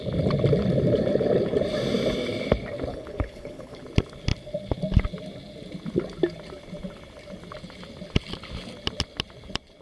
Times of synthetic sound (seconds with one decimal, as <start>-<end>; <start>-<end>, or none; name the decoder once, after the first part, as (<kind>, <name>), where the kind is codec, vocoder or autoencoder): 2.9-3.8 (codec, HILCodec)